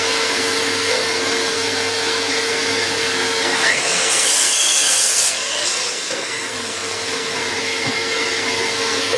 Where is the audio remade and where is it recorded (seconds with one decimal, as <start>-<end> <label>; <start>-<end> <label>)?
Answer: 0.0-9.2 remade

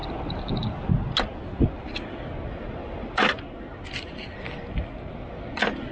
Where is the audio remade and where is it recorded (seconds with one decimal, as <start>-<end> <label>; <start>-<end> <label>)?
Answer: 0.0-5.9 recorded

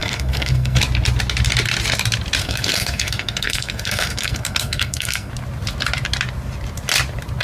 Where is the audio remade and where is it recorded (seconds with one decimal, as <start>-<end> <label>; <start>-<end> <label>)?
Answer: 0.0-0.8 remade; 0.8-2.4 recorded; 2.4-5.3 remade; 5.3-7.4 recorded

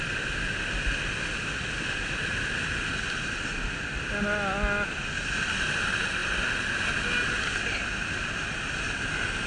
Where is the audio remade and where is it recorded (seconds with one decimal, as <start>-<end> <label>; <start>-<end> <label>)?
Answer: 0.0-9.5 recorded

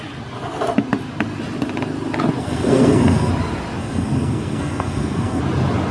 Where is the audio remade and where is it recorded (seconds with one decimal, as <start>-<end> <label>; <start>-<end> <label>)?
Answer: 0.0-2.4 recorded; 2.4-3.3 remade; 3.3-3.8 recorded; 3.8-5.4 remade; 5.4-5.9 recorded

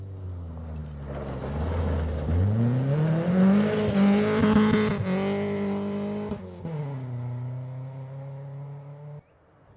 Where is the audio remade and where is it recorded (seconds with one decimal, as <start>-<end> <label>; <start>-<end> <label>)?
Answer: 0.0-9.8 recorded

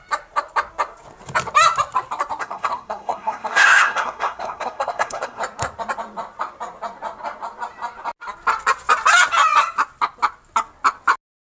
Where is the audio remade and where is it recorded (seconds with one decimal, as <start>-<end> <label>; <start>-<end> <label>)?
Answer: 0.0-2.4 recorded; 2.4-5.4 remade; 5.4-11.5 recorded